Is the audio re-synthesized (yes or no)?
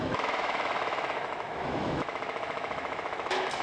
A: yes